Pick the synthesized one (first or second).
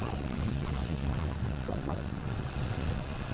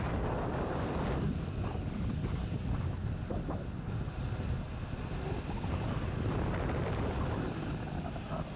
first